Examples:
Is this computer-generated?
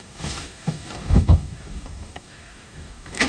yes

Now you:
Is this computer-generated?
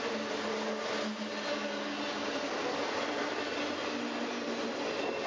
no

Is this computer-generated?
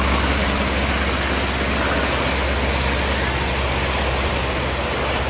no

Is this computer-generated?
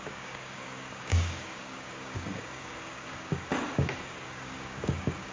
yes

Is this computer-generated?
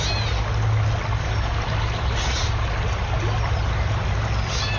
no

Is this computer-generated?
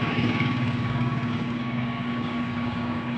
yes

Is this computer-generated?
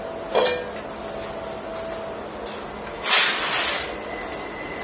no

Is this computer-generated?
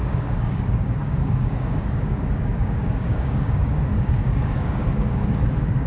yes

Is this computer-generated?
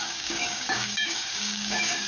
yes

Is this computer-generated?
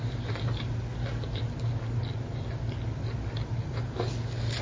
no